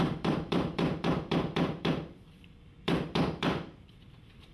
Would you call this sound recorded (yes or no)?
no